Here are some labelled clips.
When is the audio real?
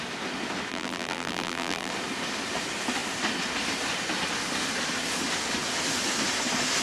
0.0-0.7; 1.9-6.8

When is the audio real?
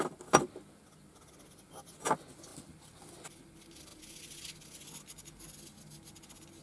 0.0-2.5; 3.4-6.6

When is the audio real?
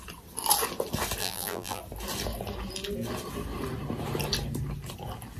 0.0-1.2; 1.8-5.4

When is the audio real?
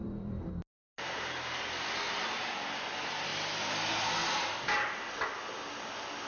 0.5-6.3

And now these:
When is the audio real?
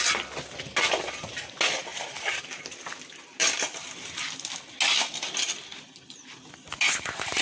0.0-1.9; 2.6-7.4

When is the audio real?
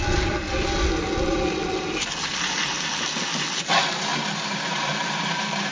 0.0-4.1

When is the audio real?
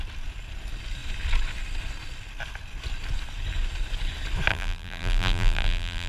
0.0-4.5